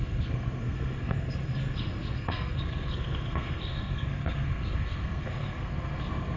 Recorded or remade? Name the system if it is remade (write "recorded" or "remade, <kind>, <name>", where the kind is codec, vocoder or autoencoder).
remade, codec, SNAC